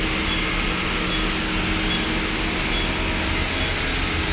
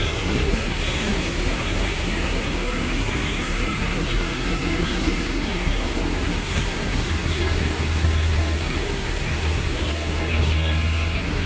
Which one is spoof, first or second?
second